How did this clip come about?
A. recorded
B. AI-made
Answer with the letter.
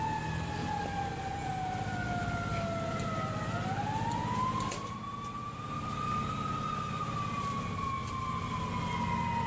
A